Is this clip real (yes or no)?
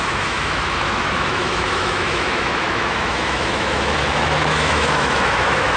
no